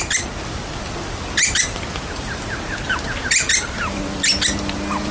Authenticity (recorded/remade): recorded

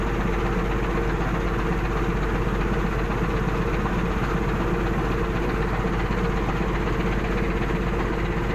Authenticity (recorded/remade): recorded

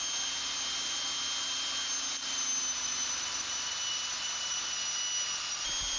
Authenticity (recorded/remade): recorded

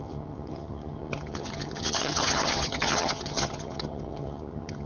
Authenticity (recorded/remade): remade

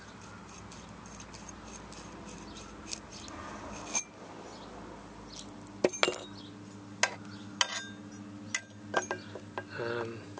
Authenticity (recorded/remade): recorded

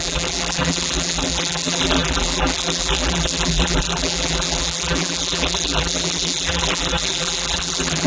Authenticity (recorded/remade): remade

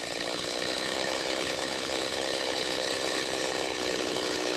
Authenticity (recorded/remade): remade